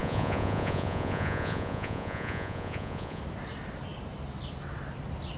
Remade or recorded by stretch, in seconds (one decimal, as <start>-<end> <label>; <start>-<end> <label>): 0.0-3.2 remade; 3.2-5.4 recorded